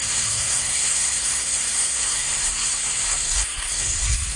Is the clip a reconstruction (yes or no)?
yes